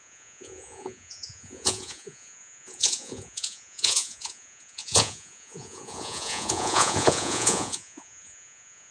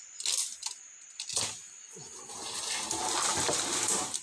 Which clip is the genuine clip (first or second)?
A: second